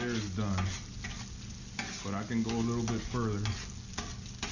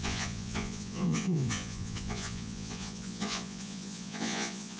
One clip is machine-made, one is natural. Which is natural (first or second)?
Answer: first